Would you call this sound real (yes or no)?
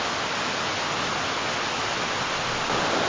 yes